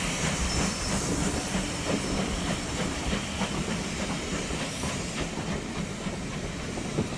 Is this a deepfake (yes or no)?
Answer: yes